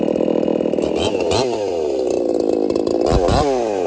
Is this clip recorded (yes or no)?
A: yes